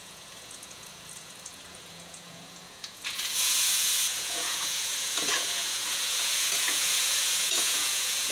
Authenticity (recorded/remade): remade